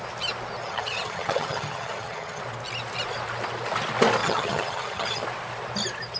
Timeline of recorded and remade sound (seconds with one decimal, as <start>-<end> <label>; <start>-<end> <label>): 0.0-0.6 recorded; 0.6-2.4 remade; 2.4-4.2 recorded; 4.2-5.2 remade; 5.2-6.2 recorded